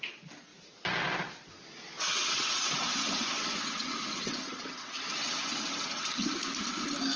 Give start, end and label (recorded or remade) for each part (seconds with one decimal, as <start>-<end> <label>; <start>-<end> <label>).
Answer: 0.0-1.9 recorded; 1.9-6.1 remade; 6.1-7.2 recorded